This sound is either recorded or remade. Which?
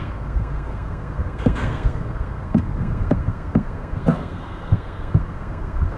remade